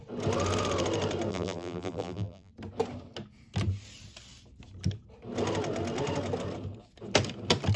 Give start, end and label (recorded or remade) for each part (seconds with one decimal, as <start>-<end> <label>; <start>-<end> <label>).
0.0-1.3 recorded; 1.3-2.5 remade; 2.5-7.8 recorded